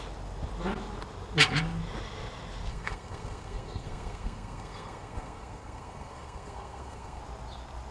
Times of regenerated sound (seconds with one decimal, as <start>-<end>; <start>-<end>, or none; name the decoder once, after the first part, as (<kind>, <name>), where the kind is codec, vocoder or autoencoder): 2.7-7.2 (codec, SNAC)